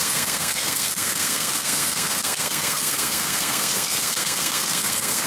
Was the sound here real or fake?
fake